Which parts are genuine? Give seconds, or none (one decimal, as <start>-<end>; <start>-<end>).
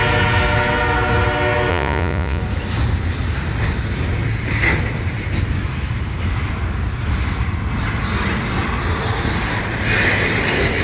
0.0-1.7; 2.4-10.8